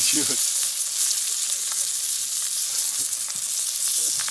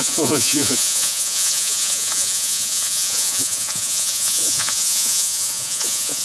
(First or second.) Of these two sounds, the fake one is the second